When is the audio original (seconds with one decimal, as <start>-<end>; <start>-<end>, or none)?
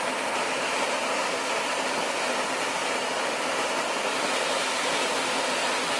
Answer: 0.0-6.0